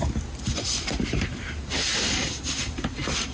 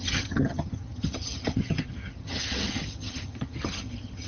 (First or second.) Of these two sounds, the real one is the first